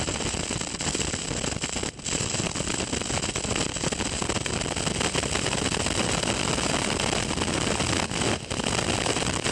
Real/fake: real